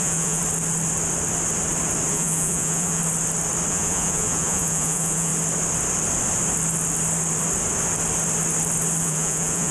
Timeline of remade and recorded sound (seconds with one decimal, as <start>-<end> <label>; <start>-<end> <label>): 0.0-0.4 remade; 0.4-2.1 recorded; 2.1-3.0 remade; 3.0-3.7 recorded; 3.7-5.3 remade; 5.3-9.0 recorded; 9.0-9.7 remade